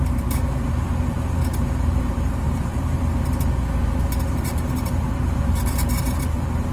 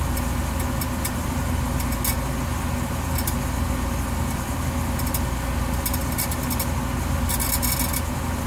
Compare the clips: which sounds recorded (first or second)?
second